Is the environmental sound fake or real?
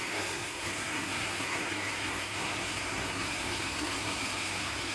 fake